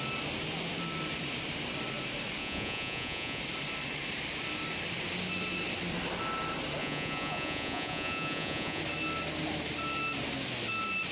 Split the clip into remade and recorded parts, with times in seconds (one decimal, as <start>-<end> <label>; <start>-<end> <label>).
0.0-2.4 recorded; 2.4-3.4 remade; 3.4-6.8 recorded; 6.8-8.8 remade; 8.8-11.1 recorded